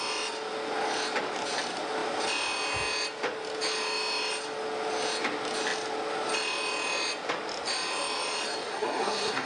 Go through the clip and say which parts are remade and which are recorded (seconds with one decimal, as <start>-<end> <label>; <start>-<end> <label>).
0.0-8.6 recorded; 8.6-9.5 remade